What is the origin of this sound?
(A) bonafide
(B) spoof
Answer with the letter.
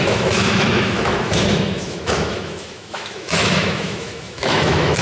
B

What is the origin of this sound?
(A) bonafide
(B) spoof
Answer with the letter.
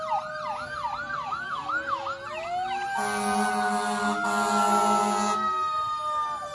A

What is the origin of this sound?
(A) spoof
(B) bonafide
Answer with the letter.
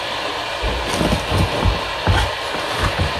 B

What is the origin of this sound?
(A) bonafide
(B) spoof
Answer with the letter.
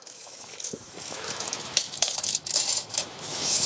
B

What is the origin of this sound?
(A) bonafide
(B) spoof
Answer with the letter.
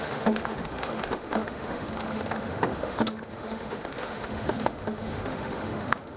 B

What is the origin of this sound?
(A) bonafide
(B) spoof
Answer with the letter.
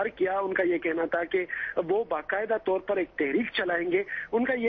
A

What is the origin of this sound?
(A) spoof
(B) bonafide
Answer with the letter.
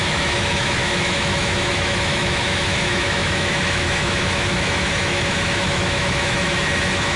A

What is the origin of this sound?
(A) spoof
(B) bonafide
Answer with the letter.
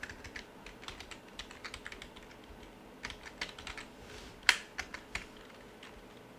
B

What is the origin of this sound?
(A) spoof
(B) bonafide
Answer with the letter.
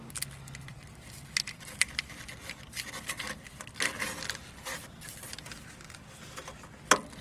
B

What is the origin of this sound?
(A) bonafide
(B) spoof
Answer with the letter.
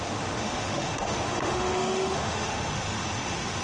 B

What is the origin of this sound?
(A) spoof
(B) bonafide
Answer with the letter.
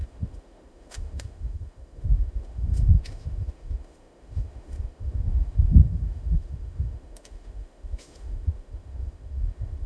A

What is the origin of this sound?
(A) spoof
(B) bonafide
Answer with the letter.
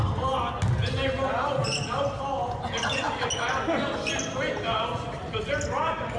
B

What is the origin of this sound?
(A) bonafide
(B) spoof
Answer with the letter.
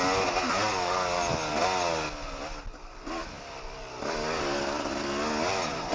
A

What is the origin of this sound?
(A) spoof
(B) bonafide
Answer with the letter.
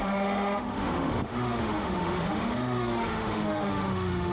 A